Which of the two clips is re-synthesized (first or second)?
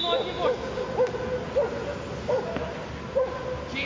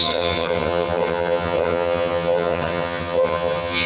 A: second